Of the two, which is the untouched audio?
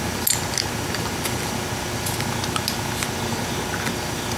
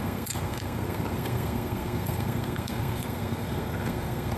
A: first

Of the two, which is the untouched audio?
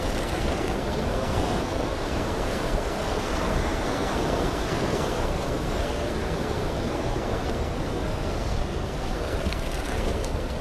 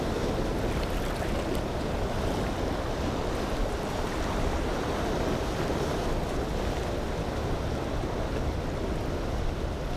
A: second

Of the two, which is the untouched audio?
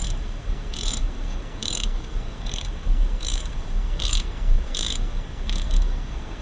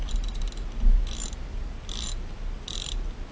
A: second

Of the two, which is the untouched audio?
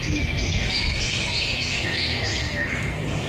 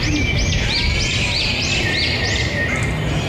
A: second